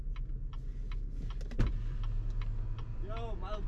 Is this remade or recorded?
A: recorded